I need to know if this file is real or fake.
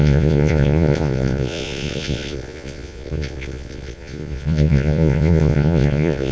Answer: fake